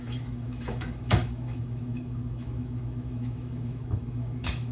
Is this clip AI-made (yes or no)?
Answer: yes